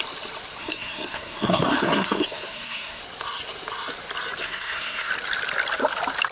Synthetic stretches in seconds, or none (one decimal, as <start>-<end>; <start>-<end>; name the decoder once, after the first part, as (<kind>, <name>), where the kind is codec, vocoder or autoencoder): 0.6-3.0 (codec, SNAC); 4.4-5.1